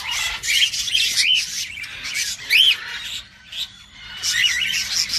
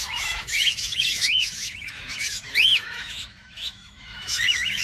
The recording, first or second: first